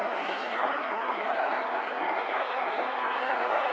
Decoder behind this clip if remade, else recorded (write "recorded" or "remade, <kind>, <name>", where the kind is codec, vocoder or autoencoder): remade, codec, SNAC